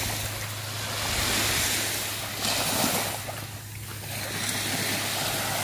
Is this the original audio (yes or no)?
yes